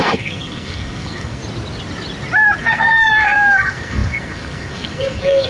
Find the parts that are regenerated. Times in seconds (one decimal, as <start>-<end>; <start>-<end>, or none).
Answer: 0.0-1.4; 2.6-5.5